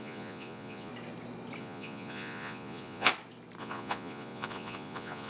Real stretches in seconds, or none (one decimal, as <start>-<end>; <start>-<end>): 0.9-1.6; 3.1-3.6